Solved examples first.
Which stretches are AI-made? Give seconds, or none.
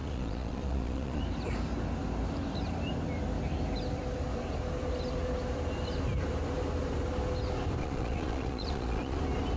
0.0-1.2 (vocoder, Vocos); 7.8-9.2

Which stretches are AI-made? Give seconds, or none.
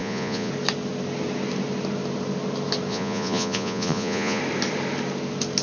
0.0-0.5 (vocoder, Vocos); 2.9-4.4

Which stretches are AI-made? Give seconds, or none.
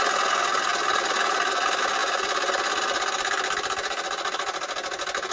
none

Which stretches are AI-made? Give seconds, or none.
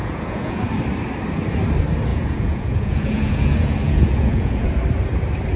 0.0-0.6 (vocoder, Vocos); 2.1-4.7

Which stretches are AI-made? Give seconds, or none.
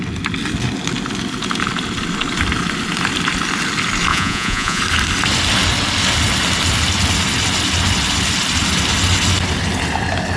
4.1-4.8 (vocoder, Vocos)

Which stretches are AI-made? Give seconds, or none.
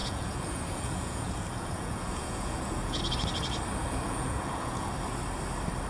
0.0-3.0 (vocoder, Vocos); 3.8-4.9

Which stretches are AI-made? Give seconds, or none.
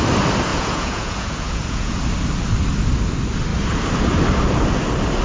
0.5-2.0 (vocoder, Vocos)